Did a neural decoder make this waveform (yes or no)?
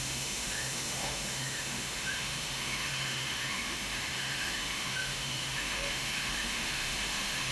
yes